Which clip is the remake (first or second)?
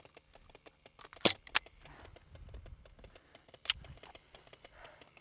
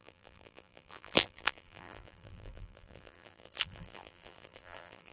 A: second